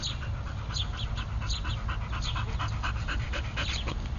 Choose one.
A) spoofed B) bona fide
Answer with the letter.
B